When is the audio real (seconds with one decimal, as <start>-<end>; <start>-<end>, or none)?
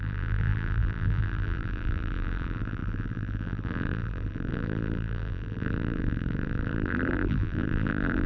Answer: none